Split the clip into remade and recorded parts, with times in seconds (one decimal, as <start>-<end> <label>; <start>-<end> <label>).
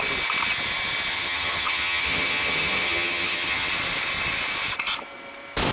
0.0-1.1 recorded; 1.1-3.7 remade; 3.7-5.7 recorded